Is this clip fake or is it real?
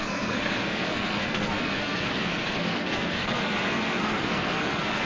fake